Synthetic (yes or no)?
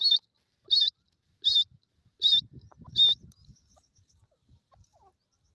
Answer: no